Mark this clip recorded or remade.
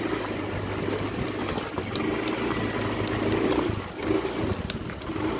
recorded